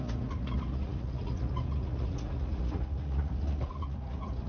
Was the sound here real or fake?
fake